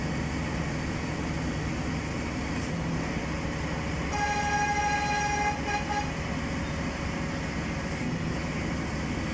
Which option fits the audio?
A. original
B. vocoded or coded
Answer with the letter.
A